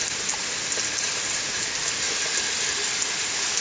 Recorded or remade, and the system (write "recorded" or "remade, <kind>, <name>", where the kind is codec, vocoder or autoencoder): recorded